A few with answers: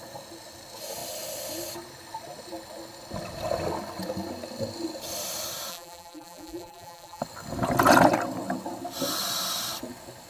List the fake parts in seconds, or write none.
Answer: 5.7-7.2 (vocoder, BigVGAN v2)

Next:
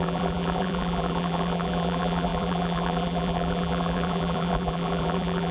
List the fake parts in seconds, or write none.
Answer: 0.0-5.5 (vocoder, BigVGAN v2)